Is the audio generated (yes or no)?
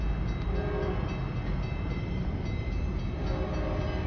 no